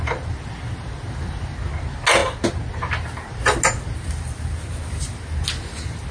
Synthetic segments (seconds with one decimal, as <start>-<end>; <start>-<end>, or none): none